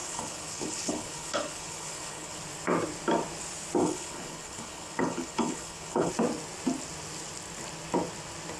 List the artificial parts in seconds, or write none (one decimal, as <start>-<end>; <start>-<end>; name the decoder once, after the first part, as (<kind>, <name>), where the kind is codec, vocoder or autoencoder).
0.0-2.4 (codec, HILCodec); 3.8-6.1